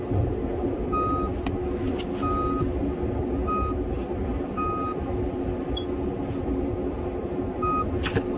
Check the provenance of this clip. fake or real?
real